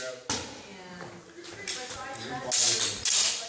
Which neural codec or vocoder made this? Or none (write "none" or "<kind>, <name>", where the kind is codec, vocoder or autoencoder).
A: none